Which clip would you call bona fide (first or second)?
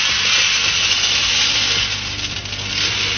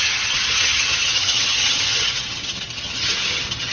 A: first